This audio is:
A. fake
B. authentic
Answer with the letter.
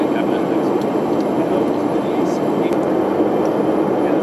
B